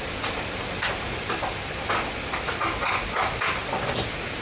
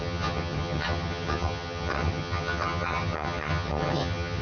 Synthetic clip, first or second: second